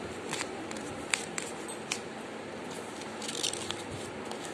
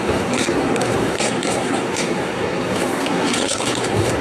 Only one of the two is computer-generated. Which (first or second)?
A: second